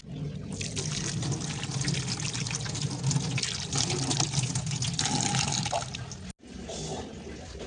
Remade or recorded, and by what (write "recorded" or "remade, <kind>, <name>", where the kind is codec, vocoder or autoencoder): recorded